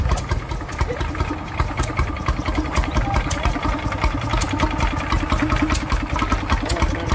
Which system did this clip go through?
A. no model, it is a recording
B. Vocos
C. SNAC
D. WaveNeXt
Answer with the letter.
A